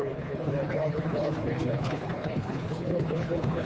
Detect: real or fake fake